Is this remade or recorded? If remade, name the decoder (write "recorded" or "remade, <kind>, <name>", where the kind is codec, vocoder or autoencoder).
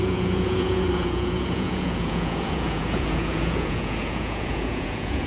remade, vocoder, Vocos